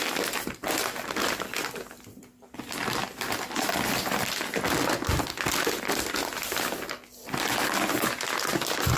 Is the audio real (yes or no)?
yes